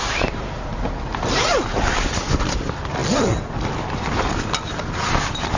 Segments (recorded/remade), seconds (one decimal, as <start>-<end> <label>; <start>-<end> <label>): 0.0-5.6 recorded

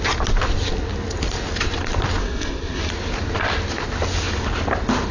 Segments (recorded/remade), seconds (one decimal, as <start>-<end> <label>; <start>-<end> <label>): 0.0-2.2 recorded; 2.2-2.9 remade; 2.9-5.1 recorded

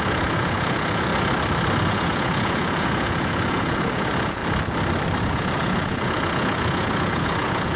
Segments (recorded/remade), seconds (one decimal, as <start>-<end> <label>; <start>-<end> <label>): 0.0-1.1 remade; 1.1-1.9 recorded; 1.9-4.4 remade; 4.4-5.2 recorded; 5.2-7.8 remade

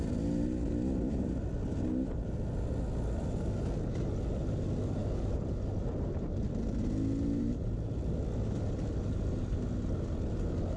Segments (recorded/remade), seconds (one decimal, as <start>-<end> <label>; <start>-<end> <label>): 0.0-10.8 recorded

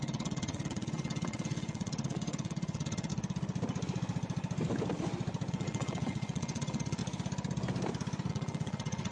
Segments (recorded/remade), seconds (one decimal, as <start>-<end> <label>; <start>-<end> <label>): 0.0-3.1 remade; 3.1-5.5 recorded; 5.5-7.0 remade; 7.0-8.3 recorded; 8.3-9.1 remade

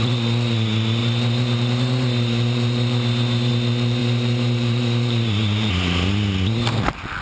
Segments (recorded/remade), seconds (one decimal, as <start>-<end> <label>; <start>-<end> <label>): 0.0-1.0 recorded; 1.0-3.5 remade; 3.5-4.0 recorded; 4.0-5.7 remade; 5.7-7.2 recorded

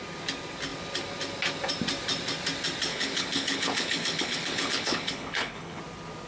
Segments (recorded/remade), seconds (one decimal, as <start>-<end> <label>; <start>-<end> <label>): 0.0-2.9 recorded; 2.9-5.8 remade; 5.8-6.3 recorded

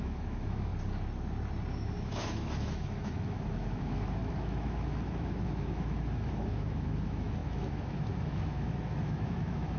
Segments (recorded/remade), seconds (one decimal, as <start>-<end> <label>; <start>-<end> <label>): 0.0-0.7 remade; 0.7-1.7 recorded; 1.7-9.8 remade